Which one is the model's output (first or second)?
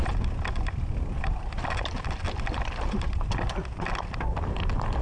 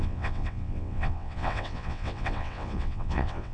second